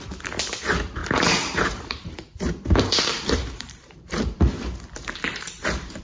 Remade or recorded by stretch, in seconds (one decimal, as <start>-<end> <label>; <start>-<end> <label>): 0.0-1.0 recorded; 1.0-4.5 remade; 4.5-5.3 recorded; 5.3-6.0 remade